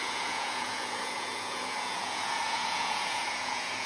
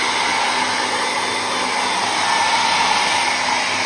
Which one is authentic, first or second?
second